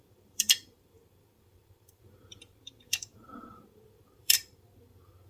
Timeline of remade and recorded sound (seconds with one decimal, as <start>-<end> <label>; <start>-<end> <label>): 0.0-5.3 remade